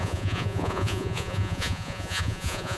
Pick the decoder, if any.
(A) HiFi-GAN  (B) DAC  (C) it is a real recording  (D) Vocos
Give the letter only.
D